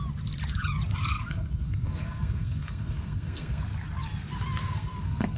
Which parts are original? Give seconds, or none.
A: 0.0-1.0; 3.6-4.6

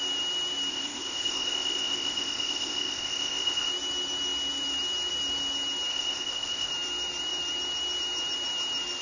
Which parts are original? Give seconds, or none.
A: 0.0-0.7; 3.7-5.9; 6.7-9.0

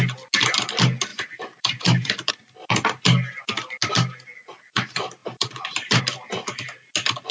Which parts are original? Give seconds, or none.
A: 0.0-1.1; 2.3-5.2; 6.0-7.3

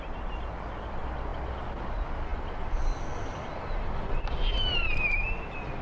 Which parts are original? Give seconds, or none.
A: 0.0-5.8